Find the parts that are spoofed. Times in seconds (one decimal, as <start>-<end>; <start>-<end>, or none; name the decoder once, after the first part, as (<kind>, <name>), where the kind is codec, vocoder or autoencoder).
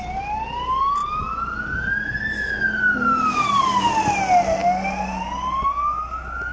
none